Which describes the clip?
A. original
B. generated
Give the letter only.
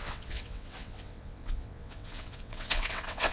B